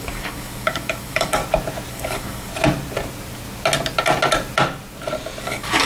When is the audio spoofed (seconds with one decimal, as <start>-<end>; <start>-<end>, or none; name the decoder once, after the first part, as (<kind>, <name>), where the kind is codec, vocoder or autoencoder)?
0.0-1.4 (codec, DAC); 1.9-2.5; 5.4-5.9